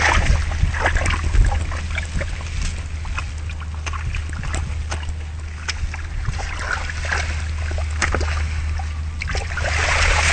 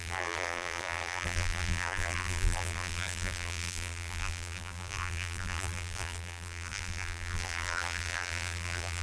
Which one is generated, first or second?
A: second